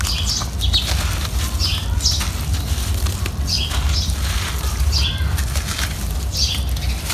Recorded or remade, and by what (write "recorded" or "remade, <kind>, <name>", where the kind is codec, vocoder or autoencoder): recorded